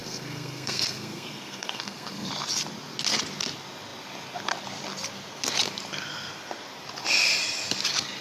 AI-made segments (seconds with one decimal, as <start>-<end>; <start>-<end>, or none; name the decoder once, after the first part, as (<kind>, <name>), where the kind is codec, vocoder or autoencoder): 0.0-2.3 (codec, SNAC)